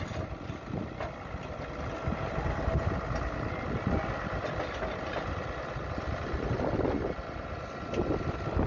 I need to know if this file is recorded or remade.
recorded